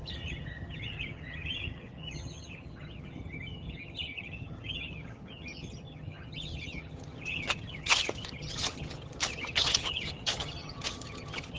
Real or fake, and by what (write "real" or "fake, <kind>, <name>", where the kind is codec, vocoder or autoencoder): fake, vocoder, HiFi-GAN